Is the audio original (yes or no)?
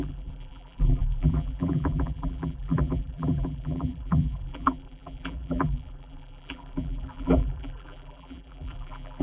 no